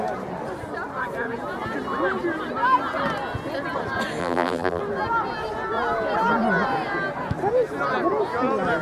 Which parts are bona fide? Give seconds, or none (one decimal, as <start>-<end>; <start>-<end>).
0.0-4.2; 4.8-8.8

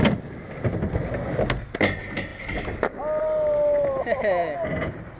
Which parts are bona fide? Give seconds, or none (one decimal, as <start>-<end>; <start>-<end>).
0.0-5.2

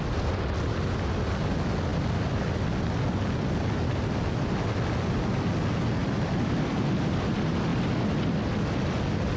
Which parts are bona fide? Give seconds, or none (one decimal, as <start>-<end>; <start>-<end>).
0.0-6.0; 7.2-9.4

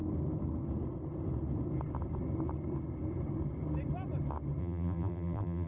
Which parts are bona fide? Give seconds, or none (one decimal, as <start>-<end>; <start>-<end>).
0.0-4.6

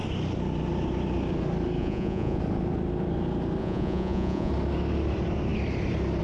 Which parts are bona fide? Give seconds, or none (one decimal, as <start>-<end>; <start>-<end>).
0.0-1.8; 2.4-3.6; 4.5-6.2

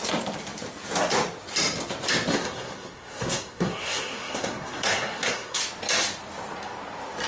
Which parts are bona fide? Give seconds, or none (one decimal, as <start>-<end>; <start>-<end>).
0.0-2.3; 5.6-7.3

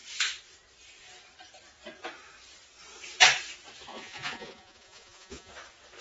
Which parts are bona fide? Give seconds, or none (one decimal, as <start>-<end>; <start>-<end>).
0.0-3.9; 5.5-6.0

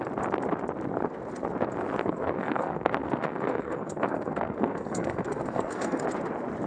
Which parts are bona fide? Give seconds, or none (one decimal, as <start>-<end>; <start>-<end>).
0.0-2.0; 6.0-6.7